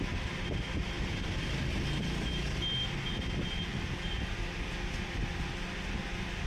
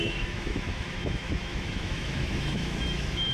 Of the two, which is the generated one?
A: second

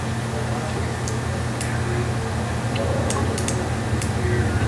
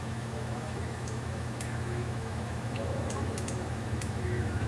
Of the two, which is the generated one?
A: second